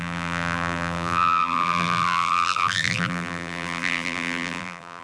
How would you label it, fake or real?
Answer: fake